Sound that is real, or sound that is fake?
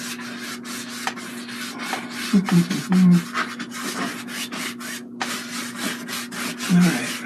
real